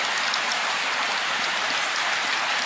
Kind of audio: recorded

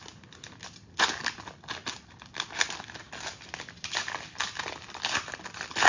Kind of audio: recorded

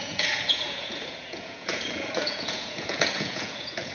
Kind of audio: remade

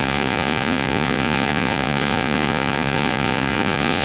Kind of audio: remade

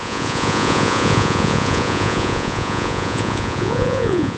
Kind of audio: remade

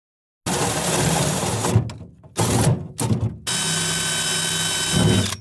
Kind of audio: recorded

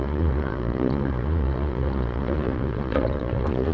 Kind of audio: remade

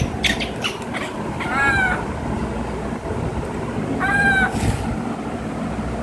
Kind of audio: recorded